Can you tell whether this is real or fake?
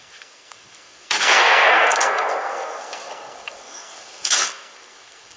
fake